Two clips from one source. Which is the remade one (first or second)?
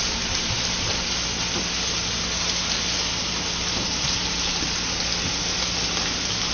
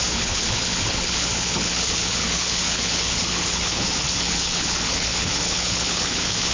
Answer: second